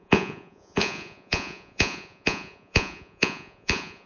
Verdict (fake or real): fake